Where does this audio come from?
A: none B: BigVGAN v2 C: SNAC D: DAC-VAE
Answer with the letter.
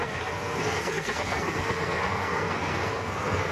C